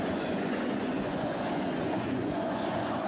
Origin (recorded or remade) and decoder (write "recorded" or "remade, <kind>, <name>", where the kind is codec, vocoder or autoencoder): remade, vocoder, Vocos